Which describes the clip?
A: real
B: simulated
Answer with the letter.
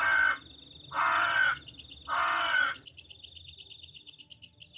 A